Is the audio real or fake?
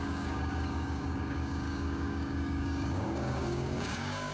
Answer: fake